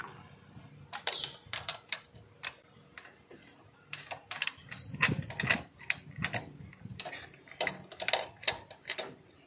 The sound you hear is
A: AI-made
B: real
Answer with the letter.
B